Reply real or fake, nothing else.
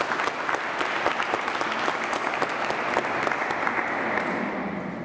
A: real